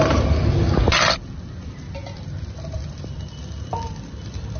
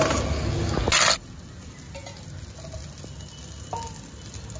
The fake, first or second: first